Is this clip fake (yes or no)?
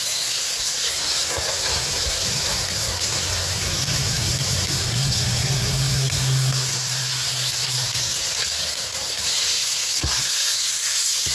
yes